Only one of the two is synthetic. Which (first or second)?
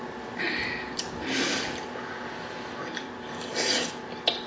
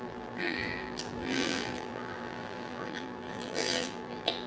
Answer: second